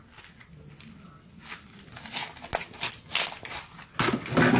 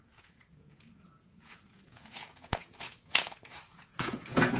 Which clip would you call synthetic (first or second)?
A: second